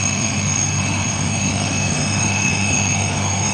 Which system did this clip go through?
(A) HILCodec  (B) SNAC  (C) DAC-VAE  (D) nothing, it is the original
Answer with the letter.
C